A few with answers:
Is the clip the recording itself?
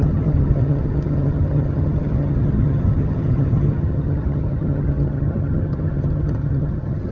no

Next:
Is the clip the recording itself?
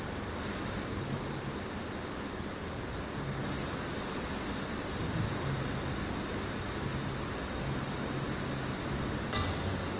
yes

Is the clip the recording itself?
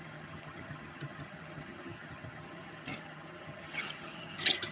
no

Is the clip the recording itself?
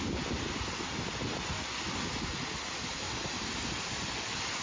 yes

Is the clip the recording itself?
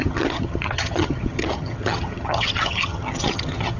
no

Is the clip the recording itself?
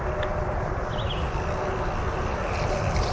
yes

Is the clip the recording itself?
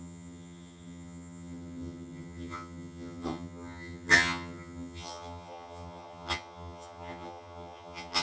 no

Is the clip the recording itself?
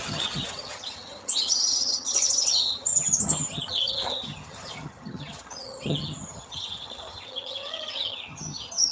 no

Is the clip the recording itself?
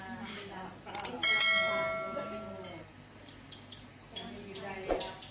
yes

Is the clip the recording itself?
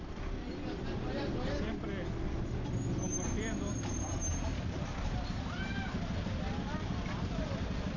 yes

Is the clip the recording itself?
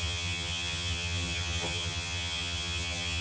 no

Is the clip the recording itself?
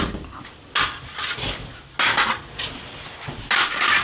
yes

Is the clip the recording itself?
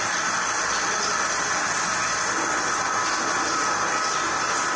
yes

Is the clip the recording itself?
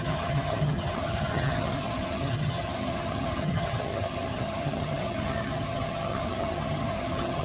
no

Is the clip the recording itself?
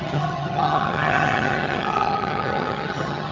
no